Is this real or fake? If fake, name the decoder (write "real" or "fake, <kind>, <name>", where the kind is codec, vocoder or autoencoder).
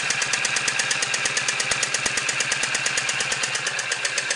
real